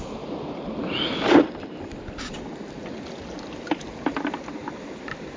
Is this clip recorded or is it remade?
recorded